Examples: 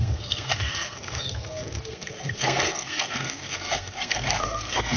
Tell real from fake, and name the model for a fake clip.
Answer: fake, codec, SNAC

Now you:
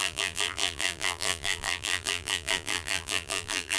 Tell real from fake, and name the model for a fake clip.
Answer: fake, vocoder, BigVGAN v2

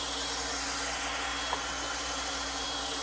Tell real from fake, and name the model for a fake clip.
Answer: real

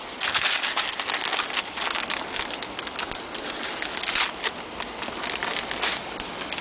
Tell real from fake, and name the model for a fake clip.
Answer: real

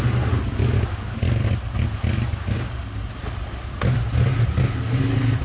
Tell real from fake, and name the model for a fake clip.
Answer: real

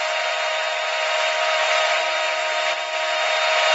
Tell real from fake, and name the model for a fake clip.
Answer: real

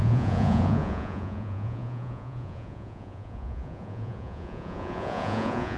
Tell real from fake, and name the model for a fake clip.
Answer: fake, vocoder, Vocos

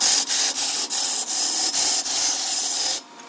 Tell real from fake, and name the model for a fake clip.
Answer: real